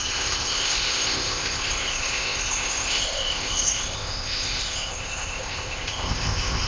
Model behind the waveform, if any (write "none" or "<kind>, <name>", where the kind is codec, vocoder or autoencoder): codec, ZipCodec